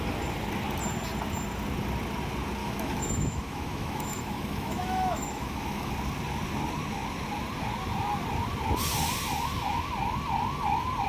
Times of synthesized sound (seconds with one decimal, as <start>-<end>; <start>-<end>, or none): 2.6-5.9

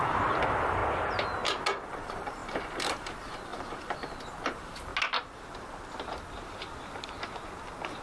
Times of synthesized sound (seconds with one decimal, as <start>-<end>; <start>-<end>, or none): 0.0-0.8; 1.9-4.9

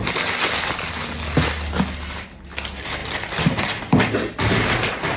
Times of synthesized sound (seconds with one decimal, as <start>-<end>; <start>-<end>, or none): none

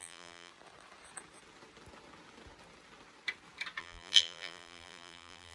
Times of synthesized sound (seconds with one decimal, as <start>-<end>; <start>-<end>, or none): 0.0-0.5; 3.8-5.5

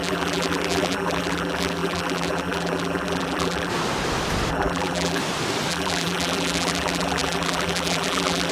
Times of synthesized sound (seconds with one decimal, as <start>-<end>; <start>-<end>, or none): 0.0-3.7; 4.5-5.2; 5.7-8.5

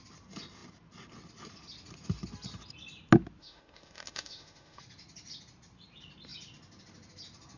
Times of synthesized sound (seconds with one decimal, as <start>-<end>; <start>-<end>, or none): 3.4-4.8

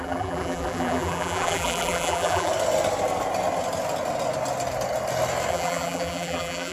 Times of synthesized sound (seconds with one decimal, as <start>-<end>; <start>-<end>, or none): 0.0-2.5; 5.5-6.7